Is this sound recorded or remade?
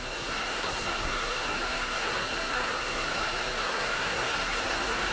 remade